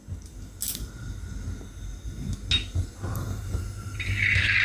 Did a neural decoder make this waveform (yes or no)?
no